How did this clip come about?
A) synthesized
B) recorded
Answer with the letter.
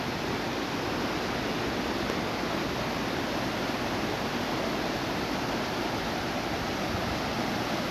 B